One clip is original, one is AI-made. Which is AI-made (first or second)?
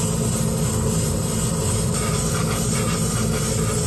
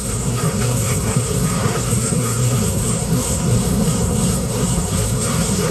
second